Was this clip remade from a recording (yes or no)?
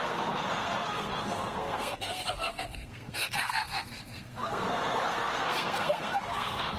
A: yes